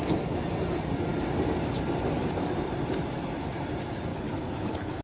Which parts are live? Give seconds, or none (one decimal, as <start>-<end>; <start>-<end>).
0.0-4.1